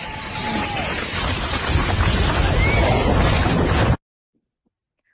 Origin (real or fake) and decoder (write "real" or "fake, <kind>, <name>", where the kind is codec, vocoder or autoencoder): real